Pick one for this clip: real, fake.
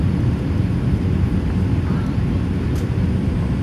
real